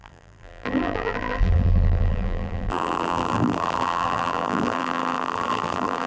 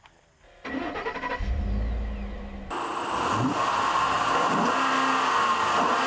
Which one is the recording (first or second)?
second